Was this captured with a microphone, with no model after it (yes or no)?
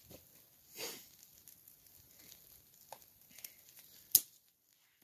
yes